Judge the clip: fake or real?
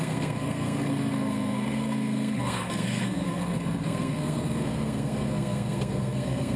fake